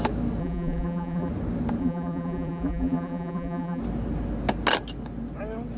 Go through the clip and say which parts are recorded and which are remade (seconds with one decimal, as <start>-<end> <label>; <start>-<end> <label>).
0.0-0.4 recorded; 0.4-1.3 remade; 1.3-1.8 recorded; 1.8-3.8 remade; 3.8-5.8 recorded